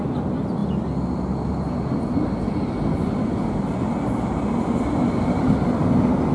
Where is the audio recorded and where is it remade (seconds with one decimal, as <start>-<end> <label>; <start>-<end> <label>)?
0.0-6.3 recorded